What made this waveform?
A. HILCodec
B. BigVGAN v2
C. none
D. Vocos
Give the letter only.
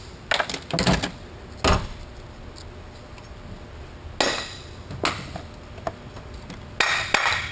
C